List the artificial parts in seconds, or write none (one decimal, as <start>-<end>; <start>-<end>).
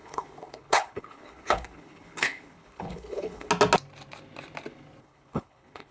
0.0-3.5; 5.0-5.9